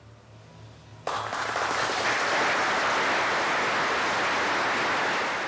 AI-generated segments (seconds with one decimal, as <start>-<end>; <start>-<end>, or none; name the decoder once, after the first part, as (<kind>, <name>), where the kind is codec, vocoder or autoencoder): 0.9-1.8 (vocoder, BigVGAN v2)